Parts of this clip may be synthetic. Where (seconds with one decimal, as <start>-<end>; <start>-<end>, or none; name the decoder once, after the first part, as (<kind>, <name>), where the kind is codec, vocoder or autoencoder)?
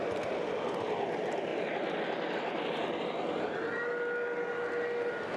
none